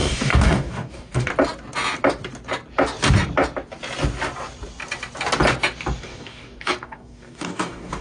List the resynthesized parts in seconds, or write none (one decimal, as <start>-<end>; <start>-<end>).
0.0-1.3; 6.0-8.0